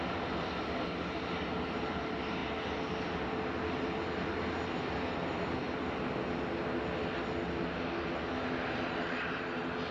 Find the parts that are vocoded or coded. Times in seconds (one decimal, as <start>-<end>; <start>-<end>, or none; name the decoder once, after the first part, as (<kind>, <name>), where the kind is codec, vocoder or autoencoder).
none